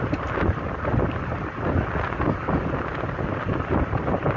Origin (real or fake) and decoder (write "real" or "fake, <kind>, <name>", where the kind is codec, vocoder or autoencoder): real